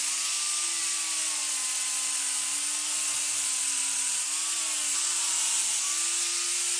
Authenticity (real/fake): real